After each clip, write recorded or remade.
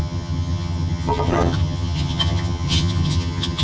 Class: remade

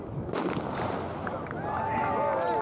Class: recorded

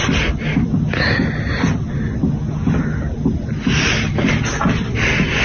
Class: recorded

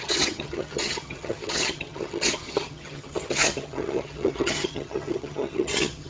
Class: remade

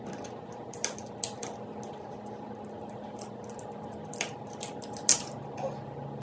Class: recorded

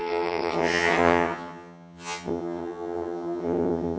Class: remade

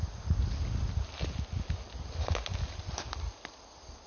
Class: recorded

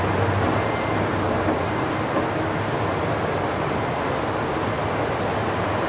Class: recorded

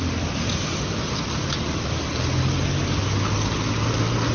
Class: recorded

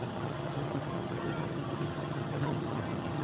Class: remade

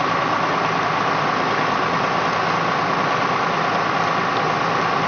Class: recorded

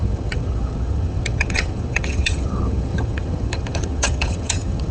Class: remade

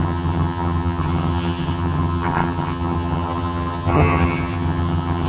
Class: remade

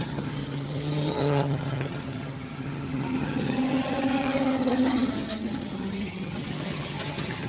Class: remade